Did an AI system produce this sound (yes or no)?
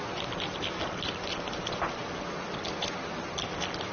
no